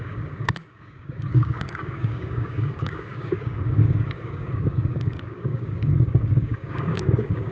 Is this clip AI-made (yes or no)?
yes